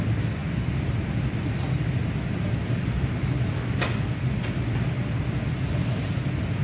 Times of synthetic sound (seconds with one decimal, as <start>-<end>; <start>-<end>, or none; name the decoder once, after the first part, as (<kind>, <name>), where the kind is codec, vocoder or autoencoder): none